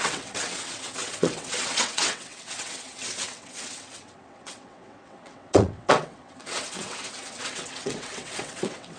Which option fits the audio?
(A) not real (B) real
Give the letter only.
A